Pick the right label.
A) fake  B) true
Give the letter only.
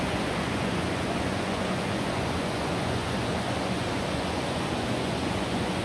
A